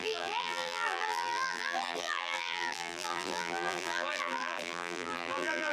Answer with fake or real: fake